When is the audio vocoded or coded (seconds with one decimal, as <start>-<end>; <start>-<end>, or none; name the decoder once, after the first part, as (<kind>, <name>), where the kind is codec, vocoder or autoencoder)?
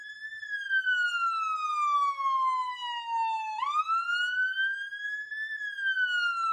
none